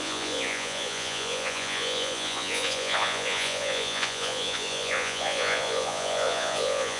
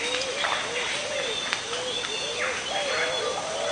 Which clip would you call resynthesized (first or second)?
first